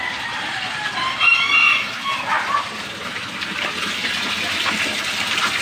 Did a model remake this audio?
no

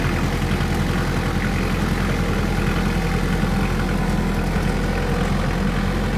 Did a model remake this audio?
no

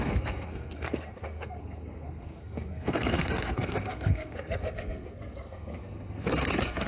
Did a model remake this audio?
yes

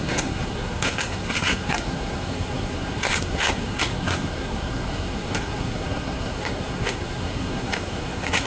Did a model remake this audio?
yes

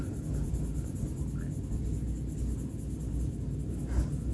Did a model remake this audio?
no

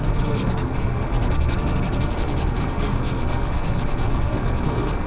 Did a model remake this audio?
yes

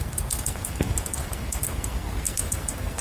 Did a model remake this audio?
yes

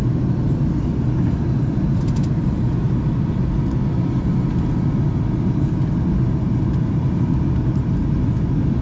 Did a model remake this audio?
no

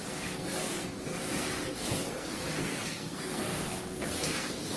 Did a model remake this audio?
yes